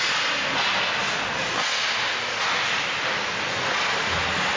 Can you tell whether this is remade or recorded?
recorded